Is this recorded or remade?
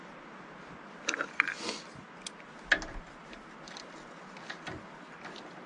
recorded